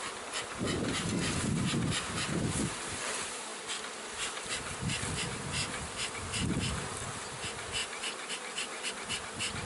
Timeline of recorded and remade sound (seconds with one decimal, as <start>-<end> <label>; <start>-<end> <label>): 0.0-3.5 recorded; 3.5-6.8 remade; 6.8-7.8 recorded; 7.8-8.9 remade; 8.9-9.6 recorded